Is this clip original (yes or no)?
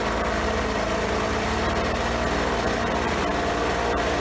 yes